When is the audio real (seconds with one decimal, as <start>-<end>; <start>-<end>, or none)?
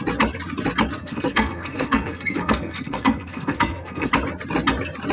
0.0-1.0; 4.1-5.1